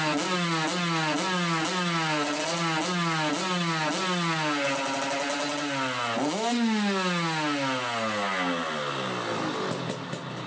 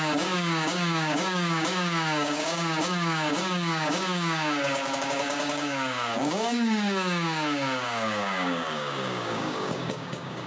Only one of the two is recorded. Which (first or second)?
first